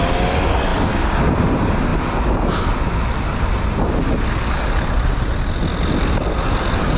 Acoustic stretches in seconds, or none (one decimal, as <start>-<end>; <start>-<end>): 0.0-7.0